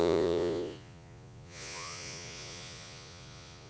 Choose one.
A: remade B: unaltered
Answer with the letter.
A